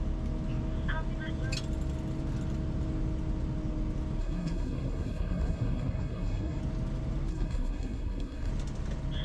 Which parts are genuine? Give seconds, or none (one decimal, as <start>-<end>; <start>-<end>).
0.0-4.2; 6.6-7.3; 8.5-9.2